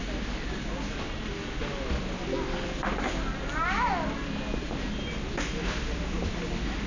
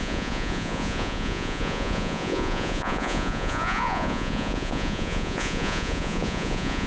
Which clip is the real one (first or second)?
first